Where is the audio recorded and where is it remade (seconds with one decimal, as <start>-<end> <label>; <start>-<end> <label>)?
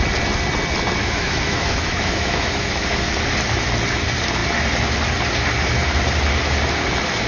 0.0-1.0 recorded; 1.0-3.1 remade; 3.1-7.3 recorded